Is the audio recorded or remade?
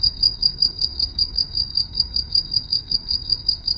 remade